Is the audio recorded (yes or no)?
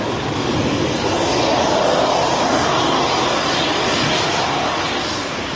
yes